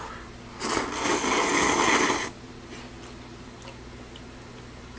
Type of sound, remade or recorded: recorded